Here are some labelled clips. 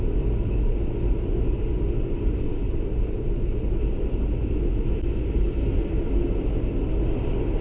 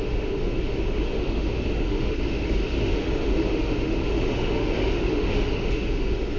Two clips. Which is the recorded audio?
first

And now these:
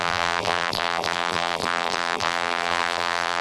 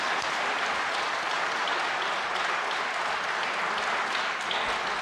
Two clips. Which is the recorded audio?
second